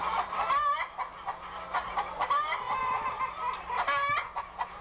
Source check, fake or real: fake